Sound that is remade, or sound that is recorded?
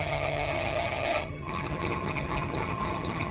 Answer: remade